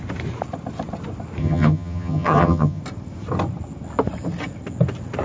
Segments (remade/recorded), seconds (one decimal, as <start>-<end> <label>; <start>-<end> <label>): 0.0-1.4 recorded; 1.4-2.8 remade; 2.8-5.2 recorded